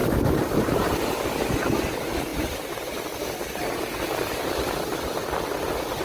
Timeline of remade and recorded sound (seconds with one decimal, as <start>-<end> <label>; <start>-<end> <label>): 0.0-6.0 recorded